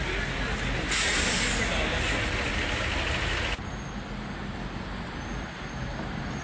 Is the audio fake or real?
real